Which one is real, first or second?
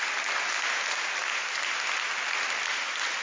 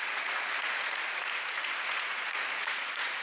first